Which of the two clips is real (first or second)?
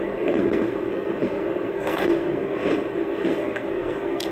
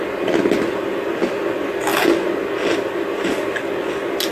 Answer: second